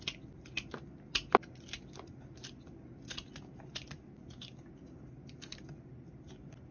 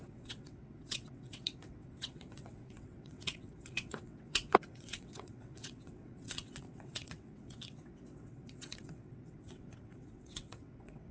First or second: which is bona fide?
first